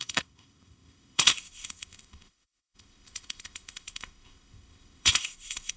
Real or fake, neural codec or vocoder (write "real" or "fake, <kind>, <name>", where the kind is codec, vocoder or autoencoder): fake, codec, ZipCodec